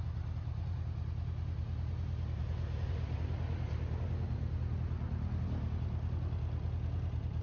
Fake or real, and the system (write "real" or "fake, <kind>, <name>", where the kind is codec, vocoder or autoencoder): real